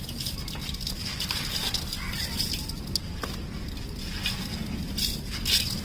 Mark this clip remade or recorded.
recorded